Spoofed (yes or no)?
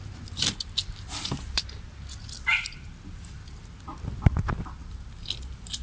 no